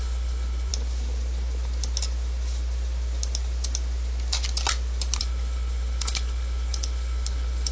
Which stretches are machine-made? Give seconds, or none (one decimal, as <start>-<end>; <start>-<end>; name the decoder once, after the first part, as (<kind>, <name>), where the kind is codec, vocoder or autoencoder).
0.0-0.7 (codec, HILCodec); 5.2-7.7